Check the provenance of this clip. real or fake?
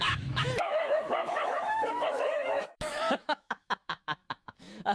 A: fake